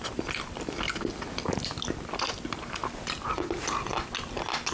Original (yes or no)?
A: yes